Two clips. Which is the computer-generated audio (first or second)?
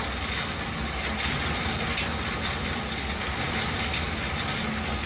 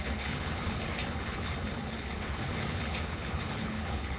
second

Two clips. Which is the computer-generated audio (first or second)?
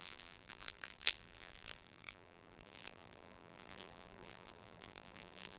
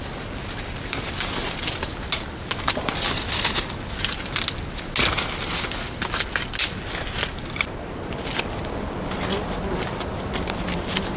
first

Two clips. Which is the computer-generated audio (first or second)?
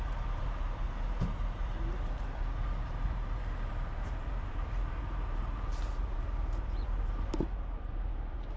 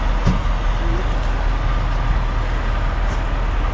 first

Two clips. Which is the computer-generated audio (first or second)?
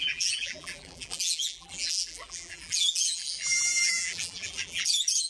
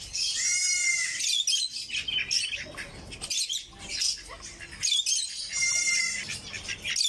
first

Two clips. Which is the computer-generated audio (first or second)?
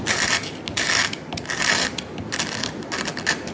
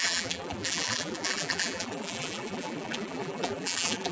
second